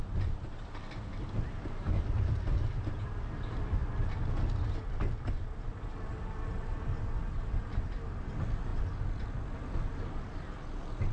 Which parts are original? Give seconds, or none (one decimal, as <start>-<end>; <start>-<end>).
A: 0.0-11.1